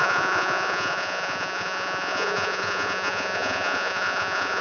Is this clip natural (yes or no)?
no